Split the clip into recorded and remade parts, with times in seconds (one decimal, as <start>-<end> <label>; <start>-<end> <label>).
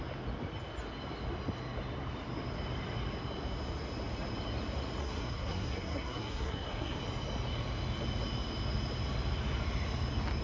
0.0-5.0 recorded; 5.0-7.0 remade; 7.0-10.4 recorded